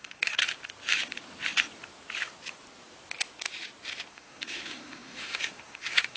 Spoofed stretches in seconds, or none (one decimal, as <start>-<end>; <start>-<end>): 0.0-0.4; 4.1-6.2

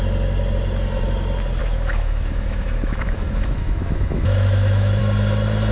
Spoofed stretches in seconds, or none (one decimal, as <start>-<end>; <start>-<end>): 1.6-5.0

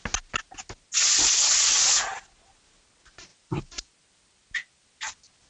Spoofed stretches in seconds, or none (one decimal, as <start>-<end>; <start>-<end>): 3.3-3.9

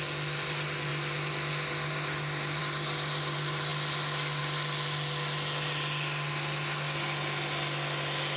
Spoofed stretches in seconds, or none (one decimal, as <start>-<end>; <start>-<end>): none

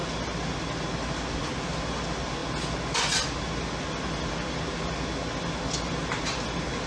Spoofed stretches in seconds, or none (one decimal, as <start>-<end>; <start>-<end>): none